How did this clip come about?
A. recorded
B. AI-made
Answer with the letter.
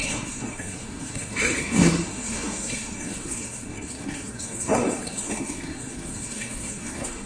B